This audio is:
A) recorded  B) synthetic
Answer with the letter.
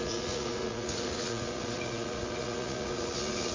B